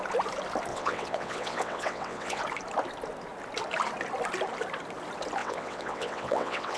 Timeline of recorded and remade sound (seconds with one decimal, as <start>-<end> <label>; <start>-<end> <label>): 0.0-0.7 recorded; 0.7-2.4 remade; 2.4-5.4 recorded; 5.4-6.8 remade